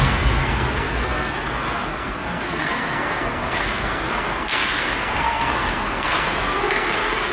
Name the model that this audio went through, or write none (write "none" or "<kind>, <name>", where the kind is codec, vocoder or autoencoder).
codec, SNAC